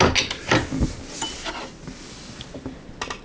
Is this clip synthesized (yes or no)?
no